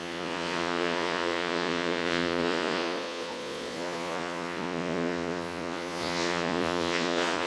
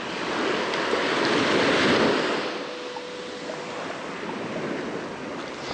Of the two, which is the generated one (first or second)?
first